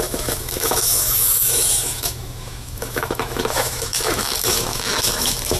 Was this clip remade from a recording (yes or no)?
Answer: yes